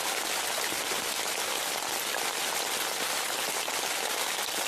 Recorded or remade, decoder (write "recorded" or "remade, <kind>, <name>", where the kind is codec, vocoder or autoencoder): recorded